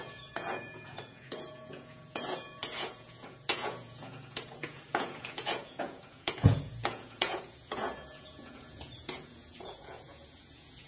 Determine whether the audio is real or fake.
fake